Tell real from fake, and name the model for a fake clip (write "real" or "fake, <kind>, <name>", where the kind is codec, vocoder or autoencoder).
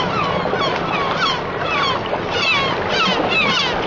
real